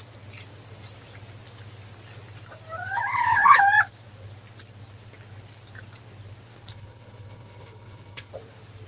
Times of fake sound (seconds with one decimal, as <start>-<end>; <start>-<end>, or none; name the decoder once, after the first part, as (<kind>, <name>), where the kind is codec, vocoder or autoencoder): 3.1-3.6 (codec, HILCodec); 6.7-8.3

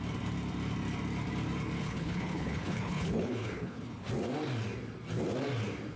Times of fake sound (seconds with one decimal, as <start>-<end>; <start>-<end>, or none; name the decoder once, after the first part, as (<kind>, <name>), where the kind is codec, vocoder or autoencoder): 1.8-4.1 (codec, HILCodec)

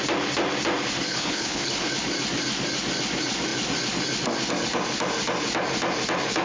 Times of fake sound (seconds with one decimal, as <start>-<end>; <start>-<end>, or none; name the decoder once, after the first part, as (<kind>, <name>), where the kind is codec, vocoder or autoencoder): 1.1-1.9 (codec, HILCodec)